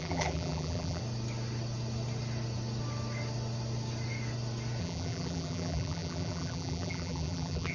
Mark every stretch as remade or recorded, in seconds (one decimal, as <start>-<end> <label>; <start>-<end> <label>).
0.0-1.0 remade; 1.0-4.8 recorded; 4.8-7.7 remade